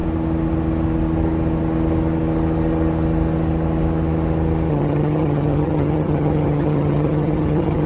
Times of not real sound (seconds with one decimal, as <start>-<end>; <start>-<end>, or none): 4.7-7.9